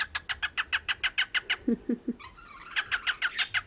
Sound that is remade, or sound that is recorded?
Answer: recorded